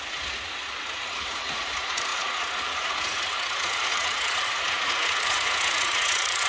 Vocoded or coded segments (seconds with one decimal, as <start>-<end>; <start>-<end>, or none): 0.0-6.5